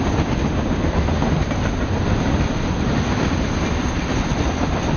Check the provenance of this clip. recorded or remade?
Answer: recorded